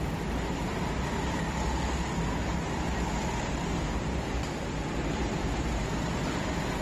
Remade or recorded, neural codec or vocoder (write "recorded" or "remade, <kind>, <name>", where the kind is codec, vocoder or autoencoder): recorded